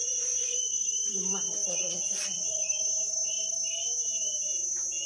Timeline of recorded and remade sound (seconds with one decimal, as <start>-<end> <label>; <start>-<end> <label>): 0.0-0.8 remade; 0.8-1.6 recorded; 1.6-2.8 remade; 2.8-5.1 recorded